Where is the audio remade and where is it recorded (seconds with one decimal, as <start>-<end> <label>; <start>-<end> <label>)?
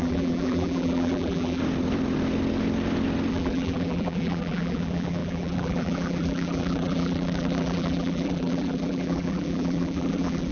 0.0-1.6 remade; 1.6-3.3 recorded; 3.3-10.5 remade